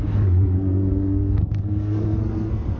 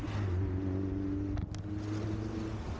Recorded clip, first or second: second